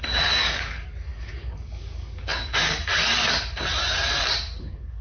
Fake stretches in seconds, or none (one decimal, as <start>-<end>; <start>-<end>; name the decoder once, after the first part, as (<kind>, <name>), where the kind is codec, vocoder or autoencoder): 0.0-2.9 (codec, DAC); 4.6-5.0